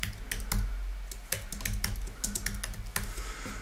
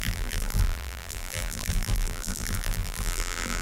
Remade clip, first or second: second